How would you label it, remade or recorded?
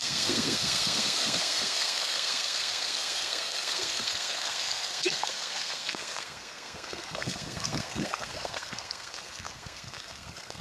remade